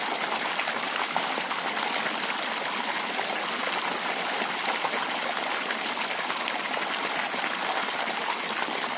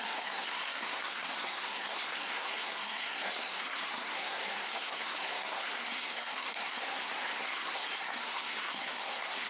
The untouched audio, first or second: first